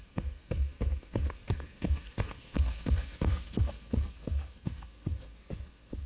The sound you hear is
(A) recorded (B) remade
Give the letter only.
B